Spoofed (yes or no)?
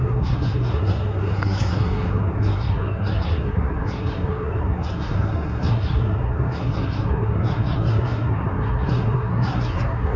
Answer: yes